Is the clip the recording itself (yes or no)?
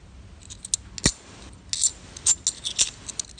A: yes